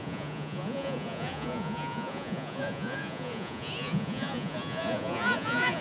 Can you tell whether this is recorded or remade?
remade